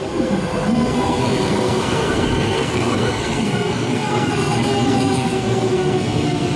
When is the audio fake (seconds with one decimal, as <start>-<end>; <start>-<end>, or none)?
0.0-6.6